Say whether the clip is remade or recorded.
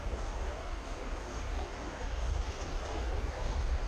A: remade